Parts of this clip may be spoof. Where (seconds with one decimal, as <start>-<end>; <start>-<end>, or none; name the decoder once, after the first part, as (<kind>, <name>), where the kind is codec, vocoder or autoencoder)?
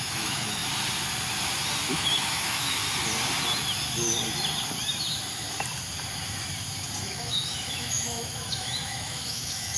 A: 0.0-0.6 (autoencoder, DAC-VAE); 1.9-2.8; 7.0-9.8